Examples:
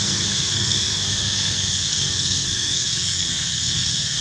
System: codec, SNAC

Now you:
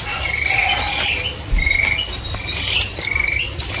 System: none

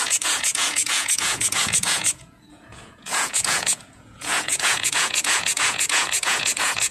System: vocoder, Vocos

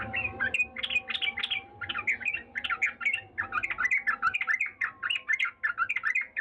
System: none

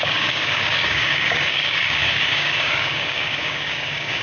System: codec, DAC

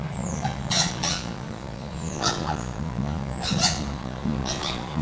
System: vocoder, Vocos